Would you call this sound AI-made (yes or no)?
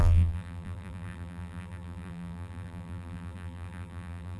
yes